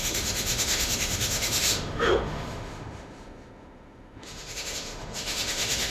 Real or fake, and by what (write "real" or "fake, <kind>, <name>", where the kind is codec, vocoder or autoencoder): fake, autoencoder, DAC-VAE